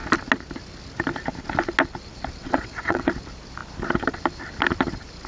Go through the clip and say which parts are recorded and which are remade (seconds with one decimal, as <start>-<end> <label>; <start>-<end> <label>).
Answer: 0.0-2.4 recorded; 2.4-3.1 remade; 3.1-5.3 recorded